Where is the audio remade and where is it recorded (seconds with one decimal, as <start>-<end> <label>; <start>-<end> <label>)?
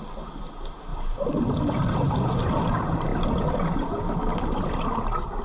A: 0.0-5.4 recorded